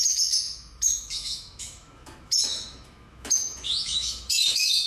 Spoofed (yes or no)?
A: yes